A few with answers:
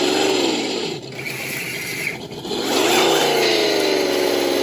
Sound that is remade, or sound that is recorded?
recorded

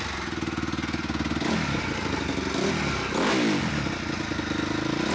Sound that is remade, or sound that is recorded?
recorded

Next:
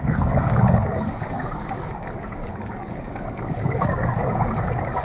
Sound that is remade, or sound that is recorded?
remade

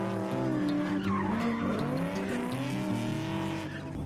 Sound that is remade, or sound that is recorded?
recorded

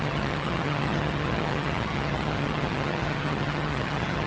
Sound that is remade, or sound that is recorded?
remade